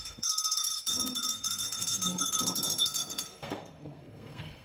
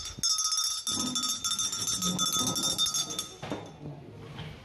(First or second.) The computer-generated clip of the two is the first